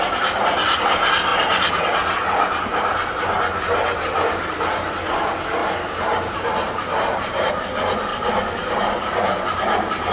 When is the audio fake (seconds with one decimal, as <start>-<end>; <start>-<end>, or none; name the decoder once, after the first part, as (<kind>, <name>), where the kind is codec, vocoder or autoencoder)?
5.6-7.5 (vocoder, BigVGAN v2); 8.1-10.1